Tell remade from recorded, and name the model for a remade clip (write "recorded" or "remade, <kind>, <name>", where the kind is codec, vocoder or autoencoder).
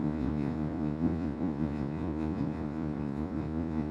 remade, vocoder, Vocos